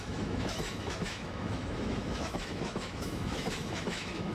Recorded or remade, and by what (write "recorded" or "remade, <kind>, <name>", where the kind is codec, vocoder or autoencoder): remade, autoencoder, DAC-VAE